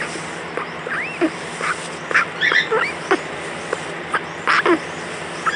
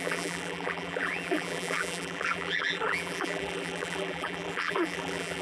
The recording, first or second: first